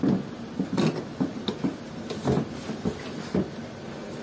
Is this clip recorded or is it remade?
recorded